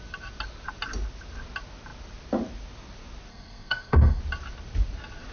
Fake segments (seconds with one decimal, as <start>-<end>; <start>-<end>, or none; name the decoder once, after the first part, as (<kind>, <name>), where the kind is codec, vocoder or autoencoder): 3.3-4.2 (codec, SNAC)

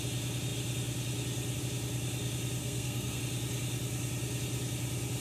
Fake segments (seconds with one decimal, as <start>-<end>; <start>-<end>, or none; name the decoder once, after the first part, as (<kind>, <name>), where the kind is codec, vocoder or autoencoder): 2.6-3.2 (codec, SNAC)

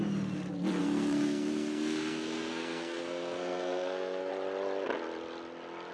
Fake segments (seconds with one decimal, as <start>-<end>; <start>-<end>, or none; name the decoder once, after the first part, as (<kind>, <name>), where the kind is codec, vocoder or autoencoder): 0.8-4.3 (codec, SNAC)